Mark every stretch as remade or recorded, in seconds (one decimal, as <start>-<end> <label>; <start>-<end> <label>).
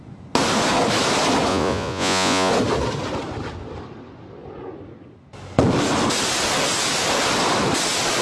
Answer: 0.0-1.5 recorded; 1.5-2.5 remade; 2.5-8.2 recorded